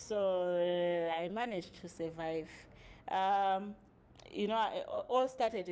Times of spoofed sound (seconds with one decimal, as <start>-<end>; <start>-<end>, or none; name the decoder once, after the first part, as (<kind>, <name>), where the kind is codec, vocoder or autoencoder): 0.0-1.8 (codec, SNAC); 4.9-5.7